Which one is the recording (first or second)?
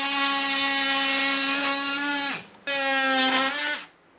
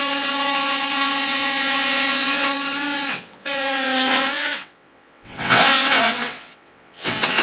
first